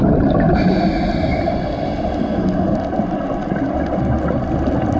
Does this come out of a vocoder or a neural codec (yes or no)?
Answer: no